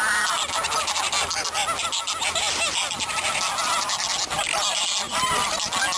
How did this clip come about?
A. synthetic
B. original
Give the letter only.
B